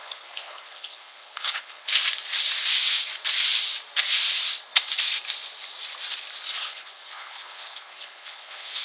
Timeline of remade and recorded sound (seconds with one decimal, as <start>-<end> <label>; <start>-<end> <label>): 0.0-1.9 remade; 1.9-6.6 recorded; 6.6-8.8 remade